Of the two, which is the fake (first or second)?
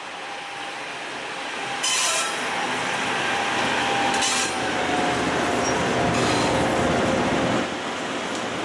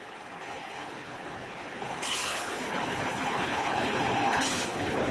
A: second